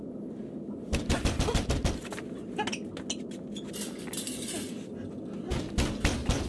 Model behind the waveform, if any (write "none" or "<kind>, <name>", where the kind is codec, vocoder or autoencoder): none